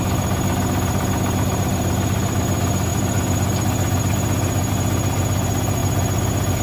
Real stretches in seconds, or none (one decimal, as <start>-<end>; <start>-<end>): 0.0-6.6